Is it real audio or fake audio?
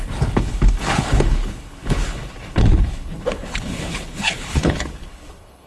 fake